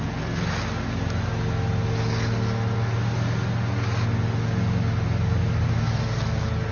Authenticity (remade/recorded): recorded